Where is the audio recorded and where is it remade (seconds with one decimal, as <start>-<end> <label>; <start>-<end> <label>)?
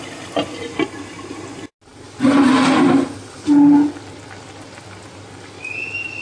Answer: 0.0-6.2 recorded